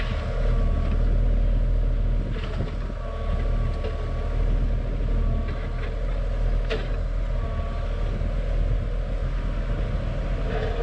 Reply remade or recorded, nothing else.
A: recorded